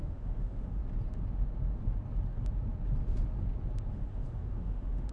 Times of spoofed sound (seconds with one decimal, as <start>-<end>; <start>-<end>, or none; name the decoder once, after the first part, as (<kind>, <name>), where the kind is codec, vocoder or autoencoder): 0.0-0.8 (autoencoder, DAC-VAE); 3.9-5.1